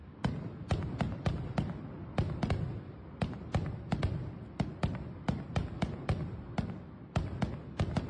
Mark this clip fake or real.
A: real